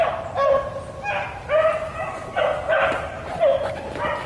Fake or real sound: real